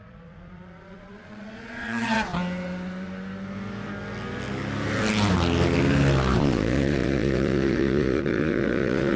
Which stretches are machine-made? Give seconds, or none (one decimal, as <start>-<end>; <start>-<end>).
0.0-2.3; 6.4-9.2